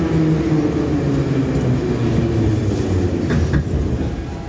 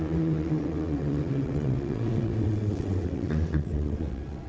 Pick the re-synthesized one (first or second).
second